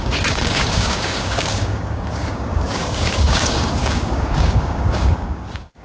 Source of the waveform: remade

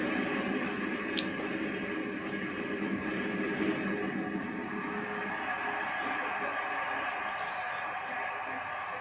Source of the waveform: recorded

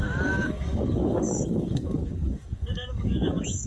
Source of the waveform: remade